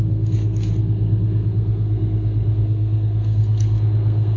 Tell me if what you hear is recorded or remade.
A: remade